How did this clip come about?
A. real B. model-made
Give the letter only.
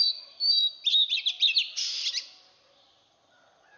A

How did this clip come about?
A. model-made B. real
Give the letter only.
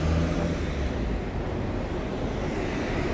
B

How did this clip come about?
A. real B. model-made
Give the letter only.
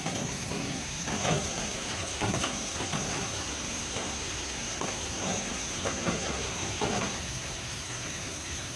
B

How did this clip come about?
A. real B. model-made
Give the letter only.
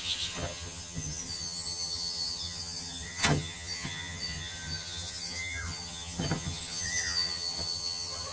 B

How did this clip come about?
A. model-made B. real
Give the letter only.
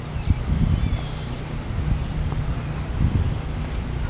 B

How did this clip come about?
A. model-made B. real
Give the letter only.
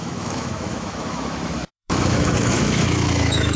A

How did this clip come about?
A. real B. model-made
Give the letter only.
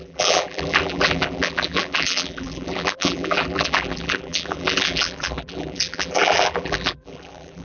B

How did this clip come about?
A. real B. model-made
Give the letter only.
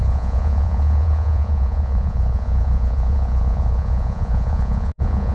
B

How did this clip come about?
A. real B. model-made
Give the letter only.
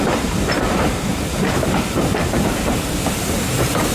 B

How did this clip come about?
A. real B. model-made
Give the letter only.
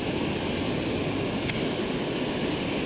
A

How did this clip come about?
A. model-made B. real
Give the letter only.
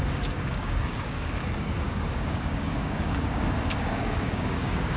A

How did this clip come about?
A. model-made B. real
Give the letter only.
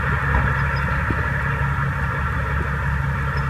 B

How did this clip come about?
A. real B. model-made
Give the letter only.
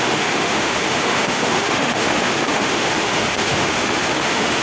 B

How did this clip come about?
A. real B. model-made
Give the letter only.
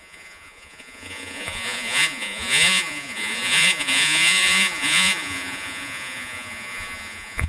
B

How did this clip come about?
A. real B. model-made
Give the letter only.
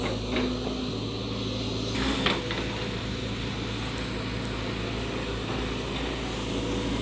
A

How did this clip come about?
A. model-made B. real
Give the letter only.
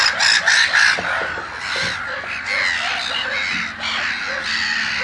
B